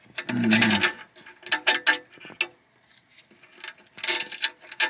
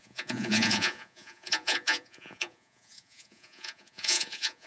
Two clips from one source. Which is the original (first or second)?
first